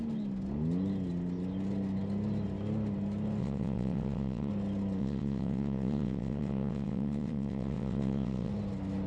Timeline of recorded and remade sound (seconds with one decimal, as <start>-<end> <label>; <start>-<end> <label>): 0.0-3.4 recorded; 3.4-4.5 remade; 4.5-5.0 recorded; 5.0-8.5 remade; 8.5-9.1 recorded